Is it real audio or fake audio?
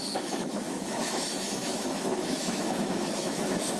fake